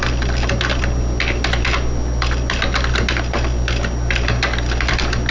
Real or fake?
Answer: real